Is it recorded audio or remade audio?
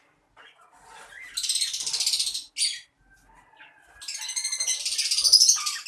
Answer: recorded